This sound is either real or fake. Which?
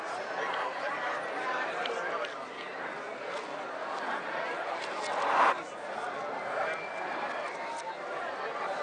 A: real